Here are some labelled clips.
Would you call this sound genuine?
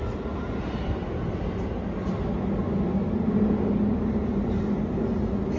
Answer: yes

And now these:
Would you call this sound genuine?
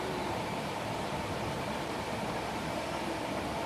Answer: no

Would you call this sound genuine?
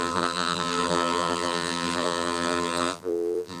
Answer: no